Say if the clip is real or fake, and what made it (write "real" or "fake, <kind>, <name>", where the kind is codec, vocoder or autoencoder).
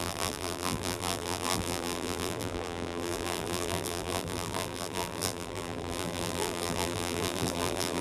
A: fake, vocoder, BigVGAN v2